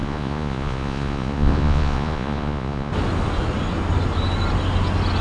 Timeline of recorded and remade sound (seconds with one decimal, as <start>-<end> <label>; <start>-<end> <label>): 0.0-2.9 remade; 2.9-5.2 recorded